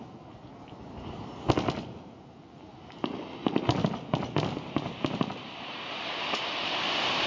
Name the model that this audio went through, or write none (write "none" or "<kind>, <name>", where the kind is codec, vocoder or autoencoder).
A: none